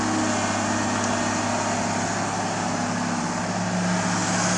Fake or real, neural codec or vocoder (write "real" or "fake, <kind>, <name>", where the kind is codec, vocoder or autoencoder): real